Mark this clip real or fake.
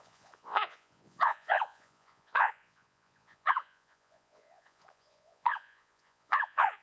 fake